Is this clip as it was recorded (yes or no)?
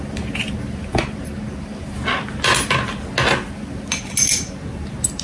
yes